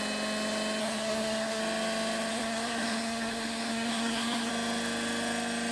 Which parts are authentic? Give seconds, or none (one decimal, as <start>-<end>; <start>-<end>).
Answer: 0.0-0.8; 1.6-2.3; 4.5-5.7